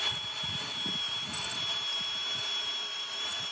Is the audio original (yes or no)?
no